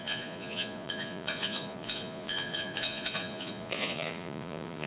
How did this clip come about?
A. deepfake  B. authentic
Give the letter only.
A